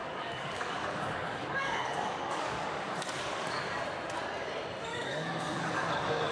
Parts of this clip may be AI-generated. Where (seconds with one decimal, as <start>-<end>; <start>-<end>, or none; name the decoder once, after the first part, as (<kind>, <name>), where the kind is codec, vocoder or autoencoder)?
0.0-3.8 (codec, DAC); 4.9-6.3